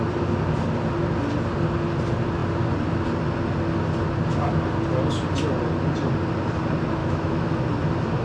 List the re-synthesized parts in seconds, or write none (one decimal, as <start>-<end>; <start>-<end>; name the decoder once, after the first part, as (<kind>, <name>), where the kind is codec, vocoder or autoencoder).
7.0-7.6 (autoencoder, DAC-VAE)